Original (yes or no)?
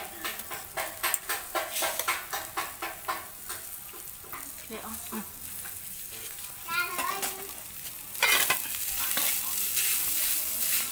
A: yes